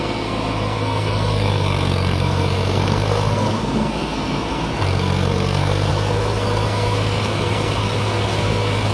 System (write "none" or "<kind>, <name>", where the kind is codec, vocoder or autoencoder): codec, SNAC